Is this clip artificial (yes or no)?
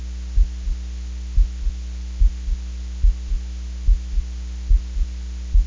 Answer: no